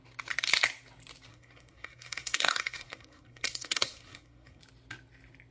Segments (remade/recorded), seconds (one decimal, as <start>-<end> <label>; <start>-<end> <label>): 0.0-1.3 recorded; 1.3-4.6 remade; 4.6-5.5 recorded

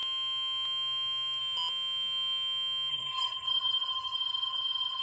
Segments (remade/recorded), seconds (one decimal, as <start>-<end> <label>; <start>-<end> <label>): 0.0-2.9 recorded; 2.9-5.0 remade

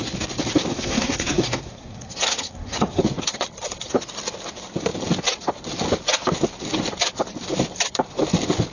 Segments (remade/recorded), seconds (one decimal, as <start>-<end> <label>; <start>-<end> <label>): 0.0-0.7 recorded; 0.7-3.0 remade; 3.0-8.7 recorded